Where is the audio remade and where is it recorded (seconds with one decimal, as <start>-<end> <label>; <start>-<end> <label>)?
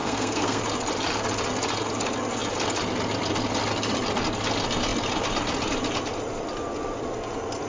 0.0-0.6 remade; 0.6-7.7 recorded